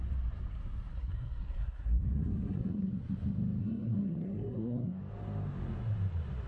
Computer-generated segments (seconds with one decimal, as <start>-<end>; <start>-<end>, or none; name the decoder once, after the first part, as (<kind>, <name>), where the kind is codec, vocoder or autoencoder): 0.9-2.9 (codec, SNAC); 3.6-5.0